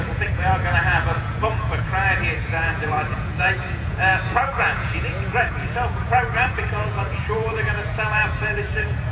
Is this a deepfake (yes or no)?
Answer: yes